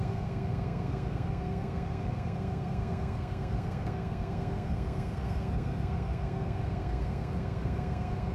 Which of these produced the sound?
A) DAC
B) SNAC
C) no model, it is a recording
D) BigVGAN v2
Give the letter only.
B